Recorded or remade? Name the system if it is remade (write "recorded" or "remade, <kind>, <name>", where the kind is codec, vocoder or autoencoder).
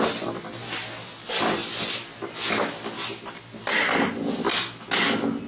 recorded